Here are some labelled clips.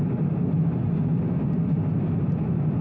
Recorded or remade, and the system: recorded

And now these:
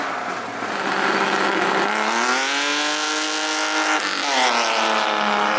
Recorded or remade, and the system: recorded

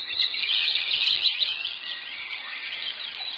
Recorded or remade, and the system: remade, vocoder, HiFi-GAN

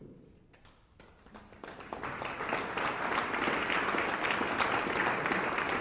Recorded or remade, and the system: recorded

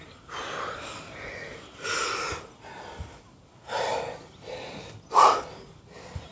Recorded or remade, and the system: recorded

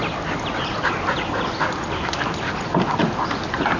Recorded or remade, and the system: recorded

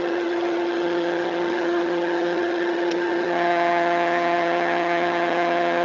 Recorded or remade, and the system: remade, vocoder, HiFi-GAN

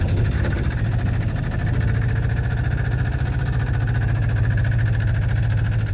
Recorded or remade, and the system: recorded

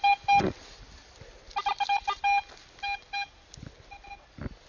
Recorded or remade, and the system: recorded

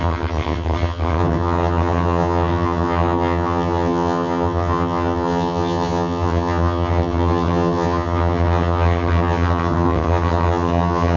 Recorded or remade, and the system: remade, vocoder, HiFi-GAN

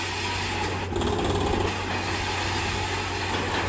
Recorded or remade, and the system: recorded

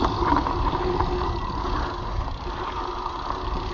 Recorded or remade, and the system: recorded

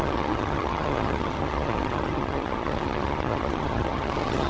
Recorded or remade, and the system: remade, vocoder, HiFi-GAN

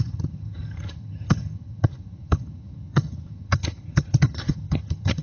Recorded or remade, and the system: remade, vocoder, HiFi-GAN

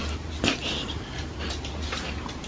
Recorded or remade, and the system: recorded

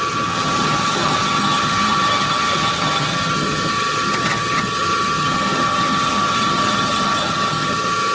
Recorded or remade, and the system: remade, vocoder, HiFi-GAN